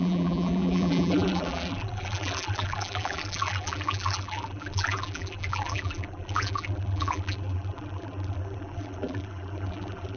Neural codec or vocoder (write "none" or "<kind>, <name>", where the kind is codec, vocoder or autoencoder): vocoder, BigVGAN v2